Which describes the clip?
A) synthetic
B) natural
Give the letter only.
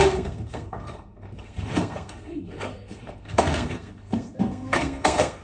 A